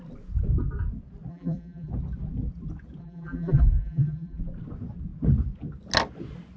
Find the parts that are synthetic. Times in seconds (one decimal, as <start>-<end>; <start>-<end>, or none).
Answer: 1.3-1.9; 3.0-4.4